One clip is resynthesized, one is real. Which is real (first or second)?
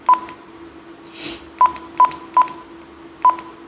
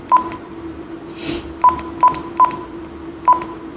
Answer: first